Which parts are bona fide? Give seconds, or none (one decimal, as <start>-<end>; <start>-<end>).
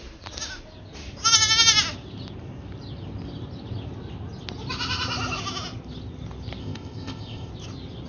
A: 0.0-6.6; 7.5-8.1